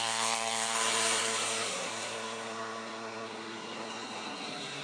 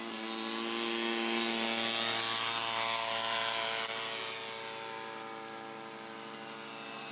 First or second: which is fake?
first